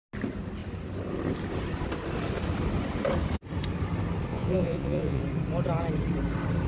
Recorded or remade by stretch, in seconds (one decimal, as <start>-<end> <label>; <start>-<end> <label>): 0.0-4.3 recorded; 4.3-5.2 remade; 5.2-6.7 recorded